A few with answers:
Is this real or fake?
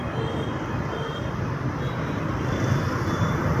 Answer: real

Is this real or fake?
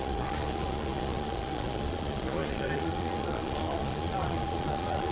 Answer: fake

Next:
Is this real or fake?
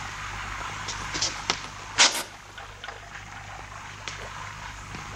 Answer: real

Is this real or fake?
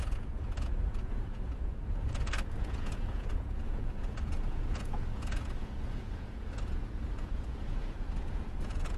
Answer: fake